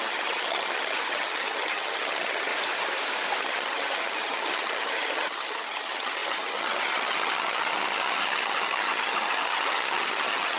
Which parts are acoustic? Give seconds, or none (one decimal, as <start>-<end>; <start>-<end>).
2.5-3.4

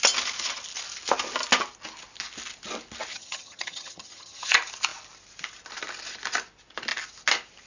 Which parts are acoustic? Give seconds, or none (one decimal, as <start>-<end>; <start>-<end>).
0.0-3.1; 4.5-7.7

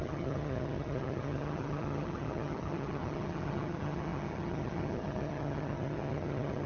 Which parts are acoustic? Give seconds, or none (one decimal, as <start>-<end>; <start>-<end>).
none

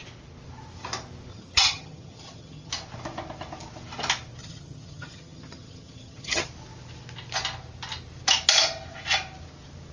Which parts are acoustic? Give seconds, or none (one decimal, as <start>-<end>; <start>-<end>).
0.0-1.3; 2.7-4.4; 6.5-9.9

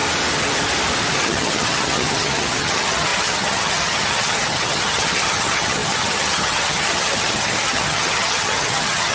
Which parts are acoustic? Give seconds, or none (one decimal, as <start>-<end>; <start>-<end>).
0.0-1.1